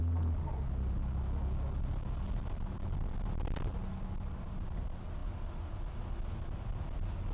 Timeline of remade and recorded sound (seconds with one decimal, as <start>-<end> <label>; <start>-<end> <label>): 0.0-7.3 recorded